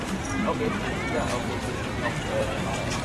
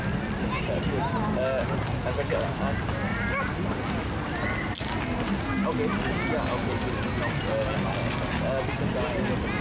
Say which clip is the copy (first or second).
first